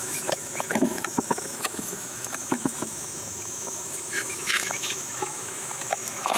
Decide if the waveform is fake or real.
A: fake